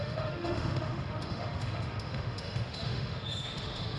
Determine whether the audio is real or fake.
fake